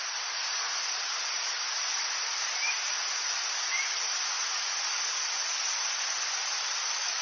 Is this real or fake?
real